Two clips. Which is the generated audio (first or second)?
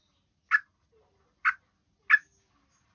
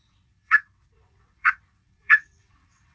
second